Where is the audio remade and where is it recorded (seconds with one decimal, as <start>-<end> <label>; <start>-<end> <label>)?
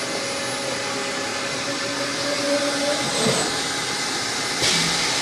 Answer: 0.0-5.2 recorded